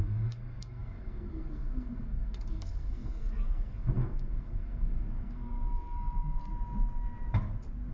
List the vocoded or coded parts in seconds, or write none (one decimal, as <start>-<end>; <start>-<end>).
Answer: 0.0-6.5